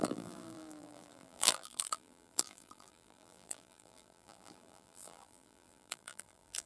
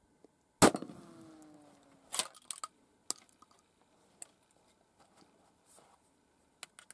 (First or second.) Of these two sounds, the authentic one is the second